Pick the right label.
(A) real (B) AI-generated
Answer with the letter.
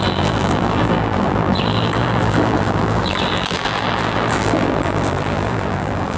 B